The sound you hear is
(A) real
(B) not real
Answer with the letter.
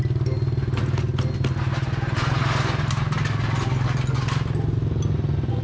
A